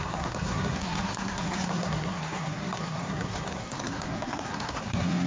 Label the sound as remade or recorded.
remade